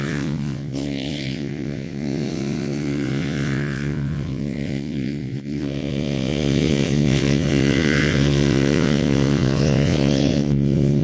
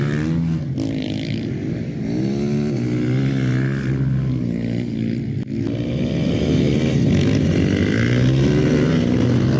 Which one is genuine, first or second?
second